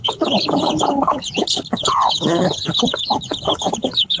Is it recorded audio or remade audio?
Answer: remade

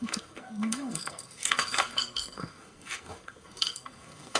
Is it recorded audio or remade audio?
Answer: remade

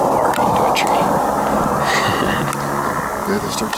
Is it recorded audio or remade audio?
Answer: recorded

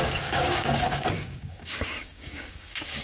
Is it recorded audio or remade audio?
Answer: remade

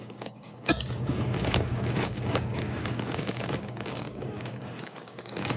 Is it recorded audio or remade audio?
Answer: remade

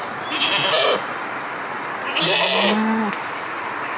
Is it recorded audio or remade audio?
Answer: recorded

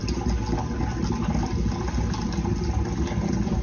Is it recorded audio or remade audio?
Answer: recorded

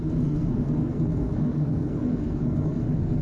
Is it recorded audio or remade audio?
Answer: remade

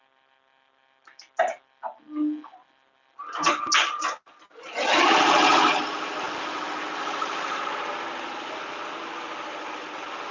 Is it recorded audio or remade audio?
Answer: recorded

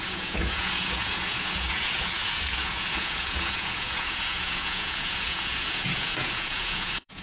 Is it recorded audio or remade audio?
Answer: remade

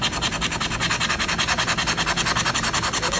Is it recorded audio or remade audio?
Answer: recorded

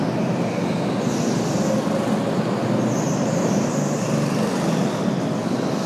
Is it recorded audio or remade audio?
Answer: recorded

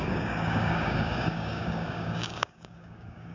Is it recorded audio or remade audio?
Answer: remade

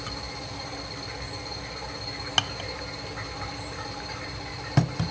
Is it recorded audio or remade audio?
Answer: recorded